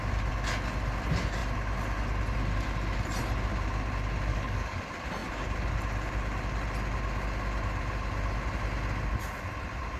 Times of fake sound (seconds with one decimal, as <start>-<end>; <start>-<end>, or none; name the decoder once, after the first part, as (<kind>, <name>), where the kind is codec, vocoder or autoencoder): 4.3-4.8 (codec, DAC)